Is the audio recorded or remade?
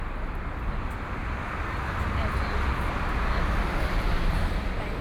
recorded